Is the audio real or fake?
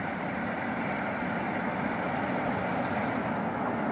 real